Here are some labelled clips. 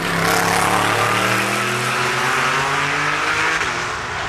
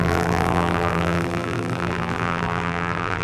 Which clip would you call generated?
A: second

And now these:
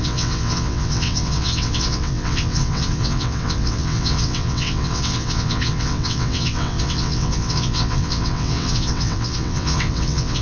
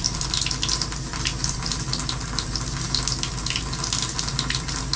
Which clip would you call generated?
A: first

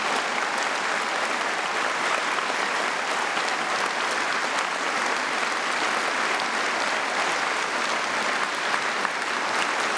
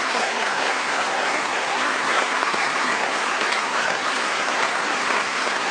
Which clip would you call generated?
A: second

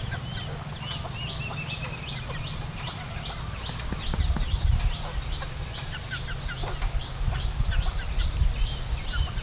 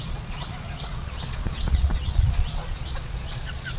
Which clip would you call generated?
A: second